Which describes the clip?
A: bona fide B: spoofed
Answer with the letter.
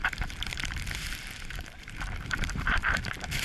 B